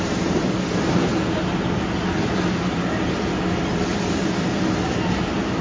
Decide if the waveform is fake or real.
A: real